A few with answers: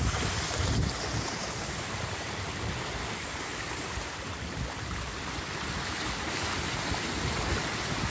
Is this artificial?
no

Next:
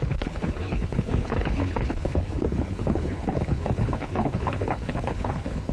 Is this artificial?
yes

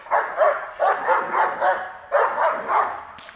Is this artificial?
no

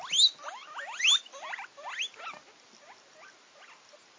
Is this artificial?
no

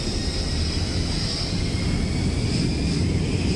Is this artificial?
no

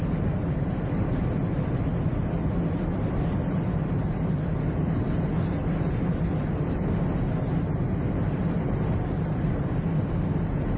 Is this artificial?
no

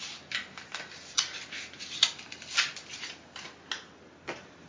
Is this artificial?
no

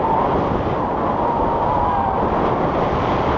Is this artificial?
no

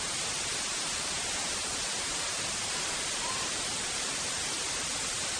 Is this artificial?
no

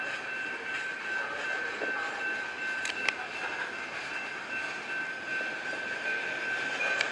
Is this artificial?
no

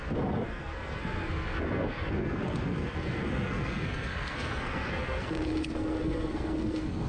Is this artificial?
yes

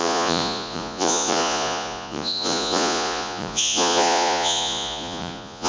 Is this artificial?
yes